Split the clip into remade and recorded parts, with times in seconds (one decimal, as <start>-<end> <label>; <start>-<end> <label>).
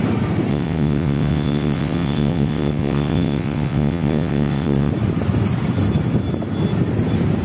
0.0-0.5 recorded; 0.5-4.9 remade; 4.9-7.4 recorded